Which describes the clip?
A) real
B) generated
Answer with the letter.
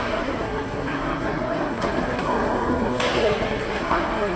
B